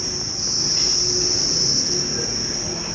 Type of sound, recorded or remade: recorded